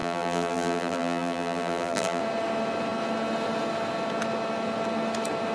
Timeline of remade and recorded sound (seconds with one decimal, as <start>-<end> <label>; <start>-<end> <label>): 0.0-2.2 remade; 2.2-5.5 recorded